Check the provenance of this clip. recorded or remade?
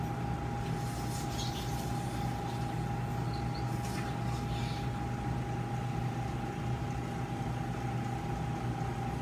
recorded